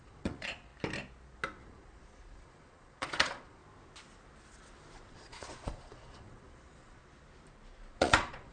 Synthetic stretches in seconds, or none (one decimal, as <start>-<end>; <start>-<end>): 0.0-0.7; 1.6-3.6; 5.1-7.0; 7.9-8.5